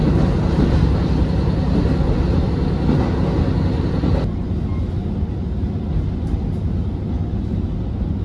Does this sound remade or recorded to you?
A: recorded